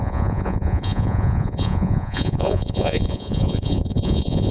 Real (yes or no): no